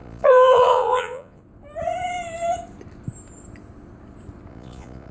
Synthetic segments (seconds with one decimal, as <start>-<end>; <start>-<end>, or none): 0.0-1.4; 4.5-5.1